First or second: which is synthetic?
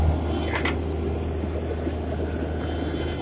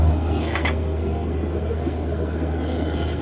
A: second